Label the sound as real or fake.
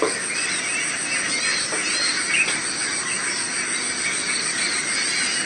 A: real